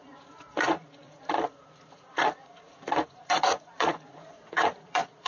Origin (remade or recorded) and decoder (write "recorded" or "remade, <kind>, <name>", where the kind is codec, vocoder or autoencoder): remade, vocoder, Vocos